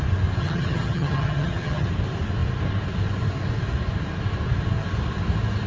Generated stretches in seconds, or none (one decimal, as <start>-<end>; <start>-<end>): 0.4-1.9